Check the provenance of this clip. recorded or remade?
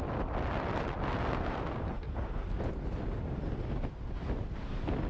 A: recorded